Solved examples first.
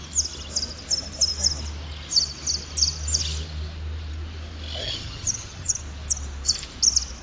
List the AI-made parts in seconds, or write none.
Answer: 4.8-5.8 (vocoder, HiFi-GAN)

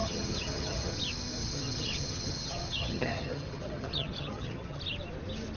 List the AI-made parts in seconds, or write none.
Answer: 0.0-0.9 (vocoder, HiFi-GAN); 1.4-4.8

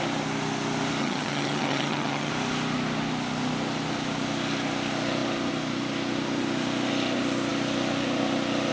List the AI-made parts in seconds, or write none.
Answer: 1.0-2.3 (vocoder, HiFi-GAN)

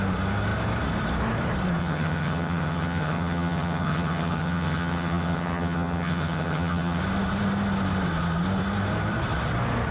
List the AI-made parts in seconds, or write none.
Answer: 1.8-7.0 (vocoder, HiFi-GAN)

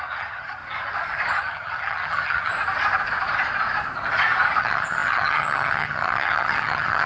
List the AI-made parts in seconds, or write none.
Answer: 0.0-0.6 (vocoder, HiFi-GAN); 1.4-2.5; 4.6-7.1

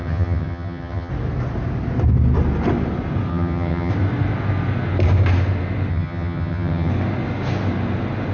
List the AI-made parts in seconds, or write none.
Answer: 0.0-1.1 (vocoder, HiFi-GAN); 3.3-3.9; 5.9-6.9

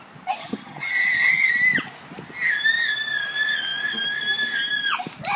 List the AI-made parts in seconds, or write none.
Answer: 0.4-1.5 (vocoder, HiFi-GAN)